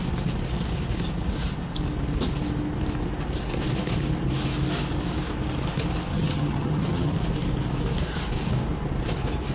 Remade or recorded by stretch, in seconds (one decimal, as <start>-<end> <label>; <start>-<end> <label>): 0.0-6.1 recorded; 6.1-7.1 remade; 7.1-9.5 recorded